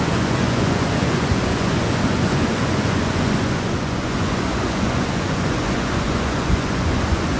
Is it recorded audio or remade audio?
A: remade